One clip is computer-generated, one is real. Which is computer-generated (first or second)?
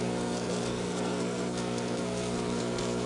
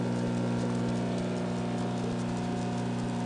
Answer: first